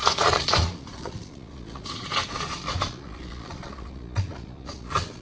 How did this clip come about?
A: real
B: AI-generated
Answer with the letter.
B